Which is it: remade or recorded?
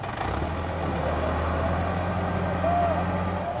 recorded